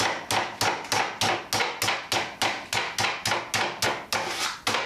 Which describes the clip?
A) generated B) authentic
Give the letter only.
B